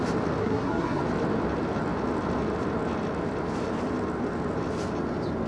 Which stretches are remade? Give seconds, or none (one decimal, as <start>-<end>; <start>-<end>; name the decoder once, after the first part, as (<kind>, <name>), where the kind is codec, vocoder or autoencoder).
0.4-1.0 (codec, SNAC)